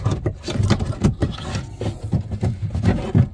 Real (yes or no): yes